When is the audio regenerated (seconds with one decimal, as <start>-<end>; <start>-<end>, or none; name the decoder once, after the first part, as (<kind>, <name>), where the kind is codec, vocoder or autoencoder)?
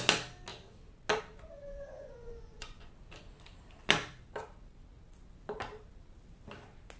1.6-2.9 (vocoder, Vocos)